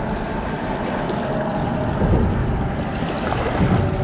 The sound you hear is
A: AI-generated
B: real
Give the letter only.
B